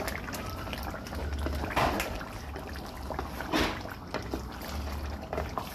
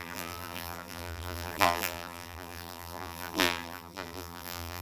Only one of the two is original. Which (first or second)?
first